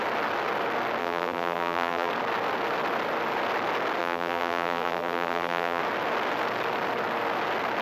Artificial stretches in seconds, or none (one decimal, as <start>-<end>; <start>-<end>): 1.0-2.1; 4.0-5.8